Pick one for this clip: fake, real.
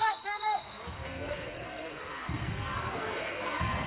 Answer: fake